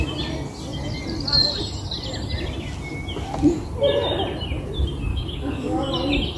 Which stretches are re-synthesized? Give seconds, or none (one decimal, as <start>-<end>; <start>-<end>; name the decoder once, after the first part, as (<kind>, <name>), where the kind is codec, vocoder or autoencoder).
5.1-5.9 (codec, DAC)